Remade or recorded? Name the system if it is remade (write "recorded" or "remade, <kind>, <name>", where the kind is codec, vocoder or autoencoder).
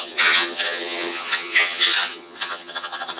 remade, vocoder, HiFi-GAN